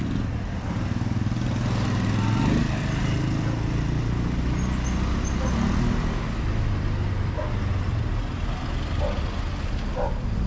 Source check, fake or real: real